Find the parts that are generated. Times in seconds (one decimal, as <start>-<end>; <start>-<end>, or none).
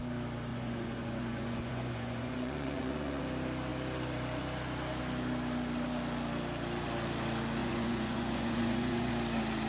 0.5-3.2; 7.6-9.1